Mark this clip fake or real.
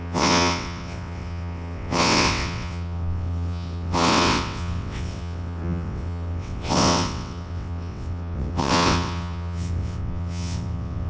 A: fake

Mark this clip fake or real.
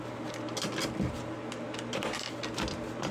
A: real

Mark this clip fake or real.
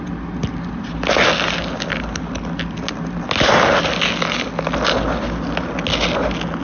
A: real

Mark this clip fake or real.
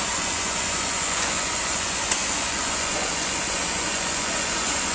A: fake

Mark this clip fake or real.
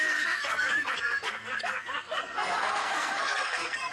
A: fake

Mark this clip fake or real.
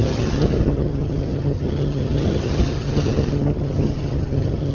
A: fake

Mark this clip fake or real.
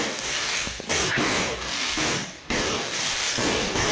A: fake